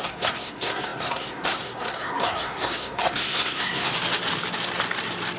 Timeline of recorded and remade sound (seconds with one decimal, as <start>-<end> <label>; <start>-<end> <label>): 0.0-3.9 remade; 3.9-5.4 recorded